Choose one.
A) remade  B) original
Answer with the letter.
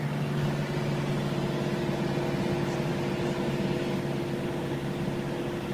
B